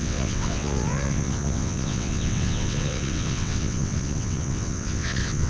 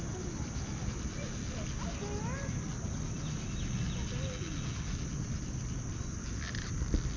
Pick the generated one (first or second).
first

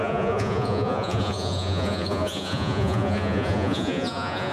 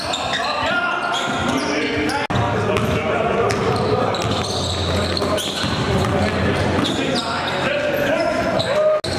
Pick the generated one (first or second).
first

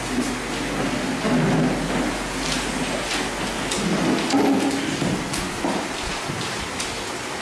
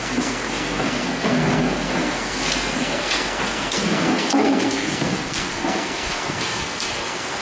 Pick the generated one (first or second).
second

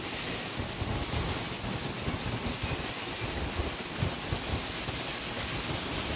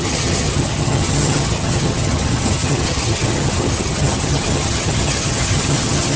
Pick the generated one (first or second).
second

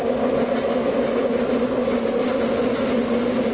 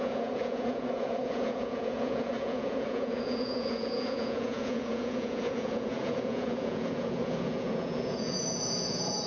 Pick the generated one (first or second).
second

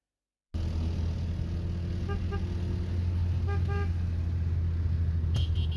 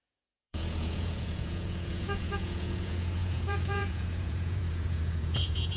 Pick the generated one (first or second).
second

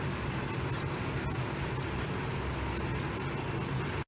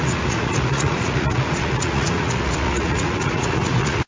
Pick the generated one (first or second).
second